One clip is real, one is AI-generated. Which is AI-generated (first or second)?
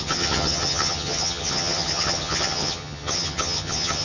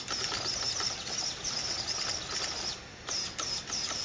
first